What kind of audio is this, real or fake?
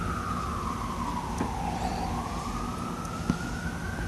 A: real